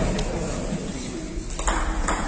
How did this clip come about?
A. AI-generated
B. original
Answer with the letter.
B